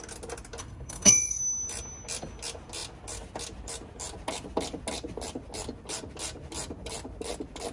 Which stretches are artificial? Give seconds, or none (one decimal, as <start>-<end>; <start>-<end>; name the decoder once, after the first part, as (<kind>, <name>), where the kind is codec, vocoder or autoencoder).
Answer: 0.6-1.4 (codec, SNAC)